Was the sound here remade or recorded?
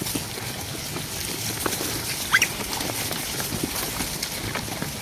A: recorded